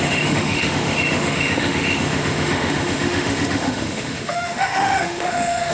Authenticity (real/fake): fake